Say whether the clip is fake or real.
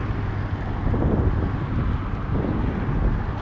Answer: real